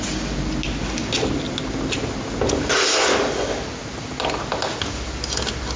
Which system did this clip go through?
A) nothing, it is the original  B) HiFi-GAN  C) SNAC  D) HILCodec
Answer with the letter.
A